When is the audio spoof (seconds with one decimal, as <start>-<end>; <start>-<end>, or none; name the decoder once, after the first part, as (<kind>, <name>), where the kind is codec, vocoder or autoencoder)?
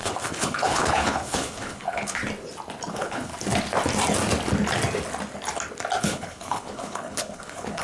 0.0-2.2 (codec, HILCodec); 2.9-3.3; 6.0-7.8